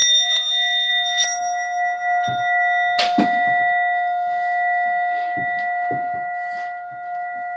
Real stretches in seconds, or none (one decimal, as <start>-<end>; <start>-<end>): 0.9-7.6